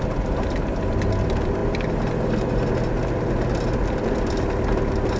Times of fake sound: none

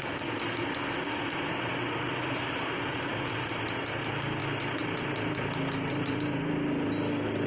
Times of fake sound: none

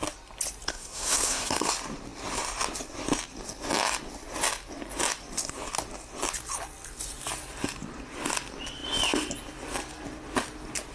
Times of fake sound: 0.7-1.7 (codec, SNAC)

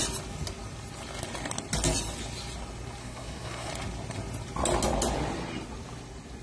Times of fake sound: 3.0-3.7 (codec, SNAC)

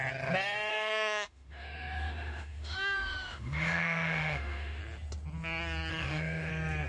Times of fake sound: 0.7-4.8 (autoencoder, DAC-VAE); 5.9-6.5

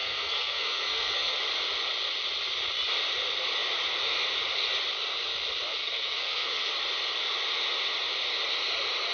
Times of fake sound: 0.0-1.4 (codec, SNAC); 5.8-6.7